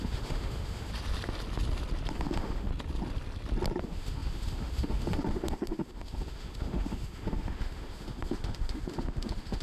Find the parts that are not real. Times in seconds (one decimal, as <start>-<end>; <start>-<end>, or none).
0.0-0.9; 2.1-2.7; 3.8-9.6